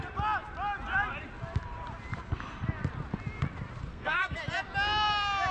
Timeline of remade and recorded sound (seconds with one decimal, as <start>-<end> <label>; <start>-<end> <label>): 0.0-3.9 recorded; 3.9-4.4 remade; 4.4-5.5 recorded